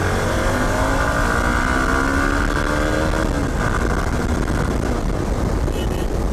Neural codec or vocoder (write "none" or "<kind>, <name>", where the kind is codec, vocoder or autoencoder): none